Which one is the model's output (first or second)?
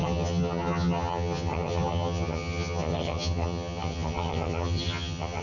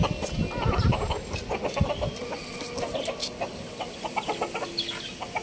first